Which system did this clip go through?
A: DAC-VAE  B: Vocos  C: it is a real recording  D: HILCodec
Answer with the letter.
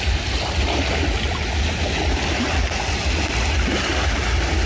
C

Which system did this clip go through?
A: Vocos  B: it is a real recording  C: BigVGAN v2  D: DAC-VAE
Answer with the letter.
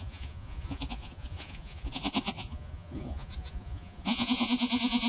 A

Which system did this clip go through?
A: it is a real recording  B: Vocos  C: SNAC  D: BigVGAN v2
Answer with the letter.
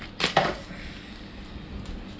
A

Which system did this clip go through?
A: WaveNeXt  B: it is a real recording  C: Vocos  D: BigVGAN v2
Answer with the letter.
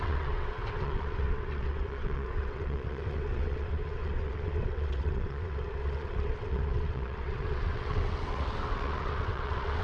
A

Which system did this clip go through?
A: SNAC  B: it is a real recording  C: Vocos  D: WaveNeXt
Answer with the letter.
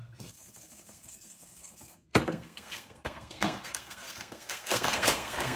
A